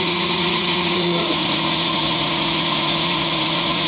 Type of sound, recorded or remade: remade